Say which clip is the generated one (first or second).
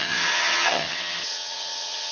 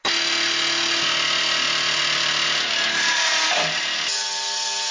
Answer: first